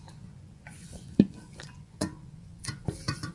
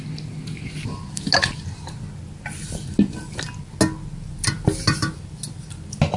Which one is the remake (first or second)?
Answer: first